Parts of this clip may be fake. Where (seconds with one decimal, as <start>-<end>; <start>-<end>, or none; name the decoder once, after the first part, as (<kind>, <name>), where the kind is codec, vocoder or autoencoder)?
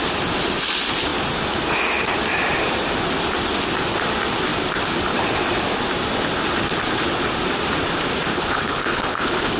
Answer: 8.3-9.6 (codec, HILCodec)